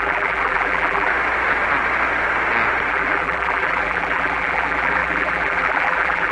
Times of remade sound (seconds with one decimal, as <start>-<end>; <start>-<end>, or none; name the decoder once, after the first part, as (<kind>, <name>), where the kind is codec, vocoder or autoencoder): 0.0-1.1 (vocoder, BigVGAN v2); 2.9-6.3